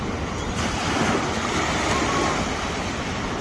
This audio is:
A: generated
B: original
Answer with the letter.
B